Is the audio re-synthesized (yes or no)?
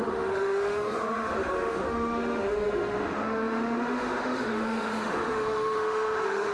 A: yes